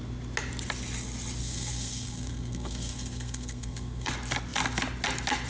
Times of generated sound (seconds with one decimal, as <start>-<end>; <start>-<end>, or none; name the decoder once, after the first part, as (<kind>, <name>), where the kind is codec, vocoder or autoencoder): 1.4-4.1 (codec, SNAC)